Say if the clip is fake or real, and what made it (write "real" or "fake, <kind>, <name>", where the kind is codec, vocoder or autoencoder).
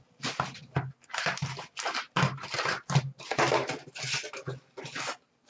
real